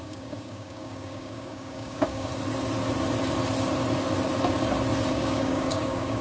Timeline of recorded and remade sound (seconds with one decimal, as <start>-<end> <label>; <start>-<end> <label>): 0.0-2.3 remade; 2.3-5.1 recorded; 5.1-6.2 remade